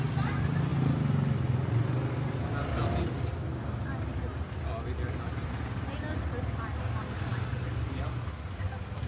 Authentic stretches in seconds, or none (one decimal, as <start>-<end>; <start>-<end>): 0.0-9.1